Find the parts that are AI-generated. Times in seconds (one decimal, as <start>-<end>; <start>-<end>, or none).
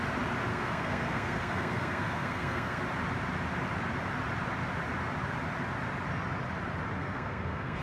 0.5-2.8; 7.0-7.8